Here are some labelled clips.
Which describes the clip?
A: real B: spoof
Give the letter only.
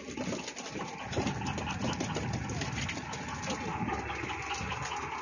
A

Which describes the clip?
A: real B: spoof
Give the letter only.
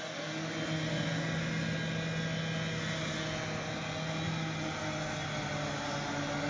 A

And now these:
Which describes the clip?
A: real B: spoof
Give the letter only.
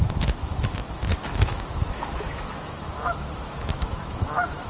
B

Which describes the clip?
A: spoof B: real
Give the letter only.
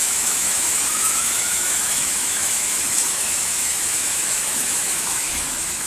A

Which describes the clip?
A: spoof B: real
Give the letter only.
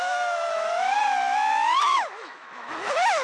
A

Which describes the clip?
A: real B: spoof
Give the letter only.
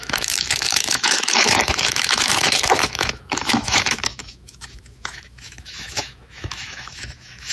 B